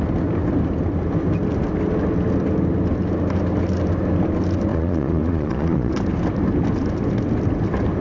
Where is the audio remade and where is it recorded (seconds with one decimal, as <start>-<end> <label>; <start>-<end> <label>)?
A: 0.0-4.7 recorded; 4.7-5.9 remade; 5.9-8.0 recorded